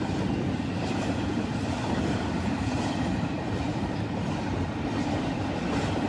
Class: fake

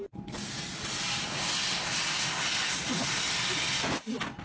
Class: real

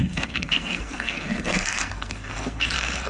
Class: fake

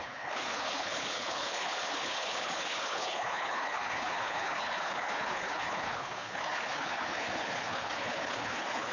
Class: fake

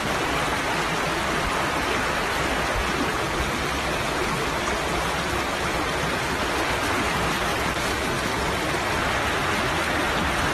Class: real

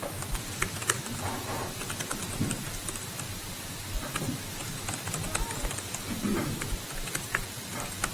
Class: real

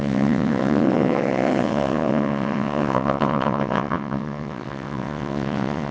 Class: fake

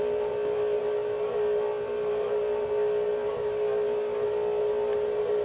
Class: real